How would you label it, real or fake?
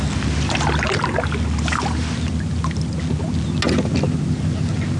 real